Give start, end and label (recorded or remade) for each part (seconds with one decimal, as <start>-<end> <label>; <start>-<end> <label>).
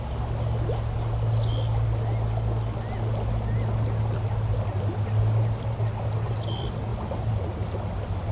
0.0-8.3 recorded